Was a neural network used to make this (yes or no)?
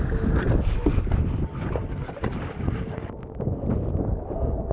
no